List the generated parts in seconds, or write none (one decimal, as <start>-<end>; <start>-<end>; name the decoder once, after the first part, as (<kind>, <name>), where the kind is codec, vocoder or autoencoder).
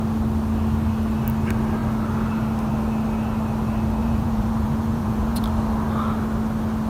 4.0-5.4 (vocoder, Vocos)